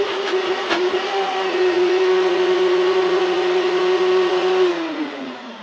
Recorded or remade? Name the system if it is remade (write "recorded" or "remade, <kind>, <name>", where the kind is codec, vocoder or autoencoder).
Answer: remade, vocoder, Vocos